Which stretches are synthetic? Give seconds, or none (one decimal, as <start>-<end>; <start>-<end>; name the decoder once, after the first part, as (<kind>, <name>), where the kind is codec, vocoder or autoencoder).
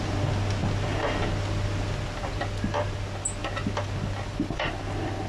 none